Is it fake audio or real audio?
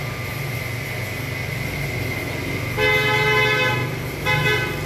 real